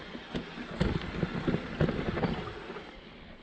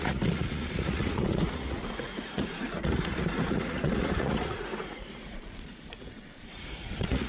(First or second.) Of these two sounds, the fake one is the second